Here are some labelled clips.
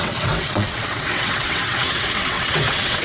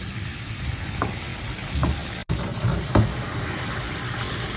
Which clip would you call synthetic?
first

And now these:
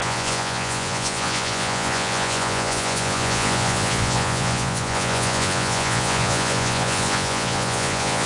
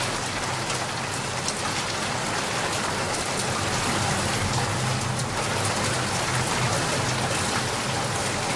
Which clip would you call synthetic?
first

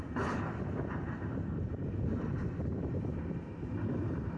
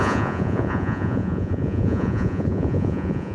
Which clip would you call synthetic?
second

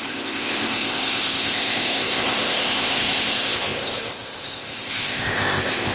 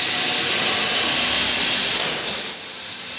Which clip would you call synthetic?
first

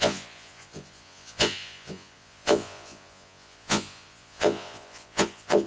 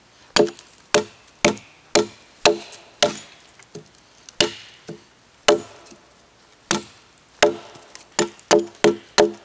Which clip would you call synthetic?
first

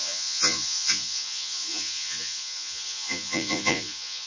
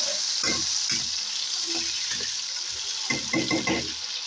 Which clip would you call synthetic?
first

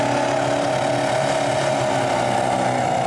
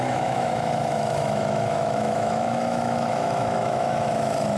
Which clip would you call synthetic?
second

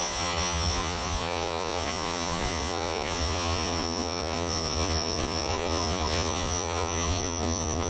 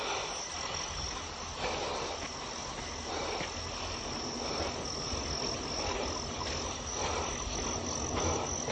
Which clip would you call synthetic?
first